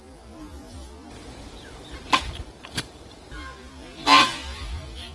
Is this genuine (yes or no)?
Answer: no